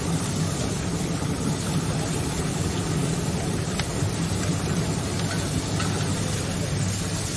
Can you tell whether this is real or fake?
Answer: real